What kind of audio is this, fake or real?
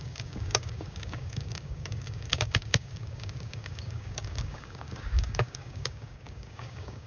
fake